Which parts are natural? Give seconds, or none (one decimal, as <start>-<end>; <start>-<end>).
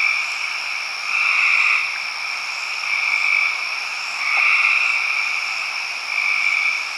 0.0-1.8; 2.3-3.9; 4.4-7.0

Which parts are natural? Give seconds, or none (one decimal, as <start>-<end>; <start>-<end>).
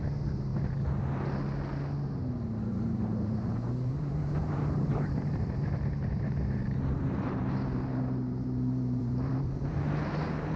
0.5-2.7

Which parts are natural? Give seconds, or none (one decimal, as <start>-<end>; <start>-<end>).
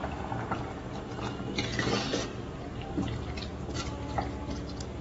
1.8-5.0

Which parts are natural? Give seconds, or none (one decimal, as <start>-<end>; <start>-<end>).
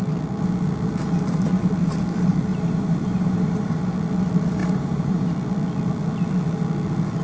0.0-2.5; 3.9-4.6; 5.3-7.2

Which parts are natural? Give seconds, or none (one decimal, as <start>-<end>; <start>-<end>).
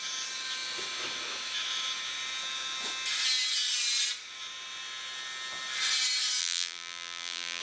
0.0-6.4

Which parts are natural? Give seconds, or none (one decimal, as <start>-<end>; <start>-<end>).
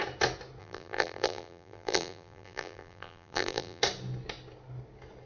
0.0-0.6; 3.8-5.3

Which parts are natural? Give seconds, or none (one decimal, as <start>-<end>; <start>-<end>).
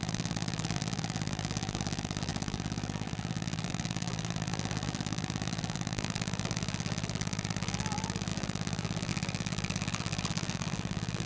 none